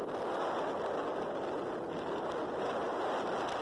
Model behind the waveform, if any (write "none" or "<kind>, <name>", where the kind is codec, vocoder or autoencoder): none